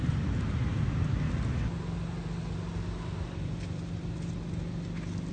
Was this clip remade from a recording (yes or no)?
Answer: no